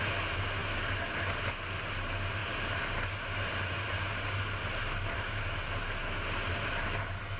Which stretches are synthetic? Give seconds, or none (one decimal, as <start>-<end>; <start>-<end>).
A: none